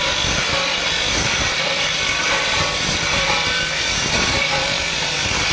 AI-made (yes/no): yes